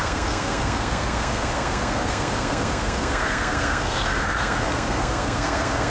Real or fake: fake